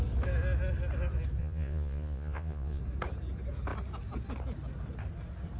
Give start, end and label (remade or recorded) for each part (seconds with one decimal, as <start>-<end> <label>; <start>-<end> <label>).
0.0-1.4 recorded; 1.4-2.8 remade; 2.8-5.6 recorded